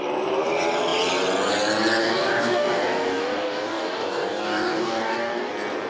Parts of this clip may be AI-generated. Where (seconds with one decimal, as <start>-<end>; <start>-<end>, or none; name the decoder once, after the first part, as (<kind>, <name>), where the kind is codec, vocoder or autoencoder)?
2.0-5.5 (codec, DAC)